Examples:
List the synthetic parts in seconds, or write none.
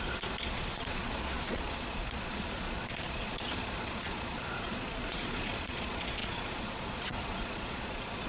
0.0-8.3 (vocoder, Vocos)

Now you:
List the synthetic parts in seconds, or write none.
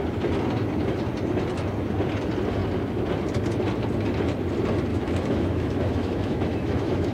4.9-7.1 (autoencoder, DAC-VAE)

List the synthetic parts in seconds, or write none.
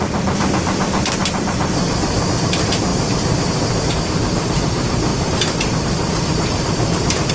0.0-7.3 (vocoder, BigVGAN v2)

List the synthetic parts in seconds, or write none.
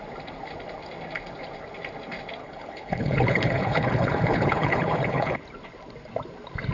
2.4-5.4 (codec, HILCodec)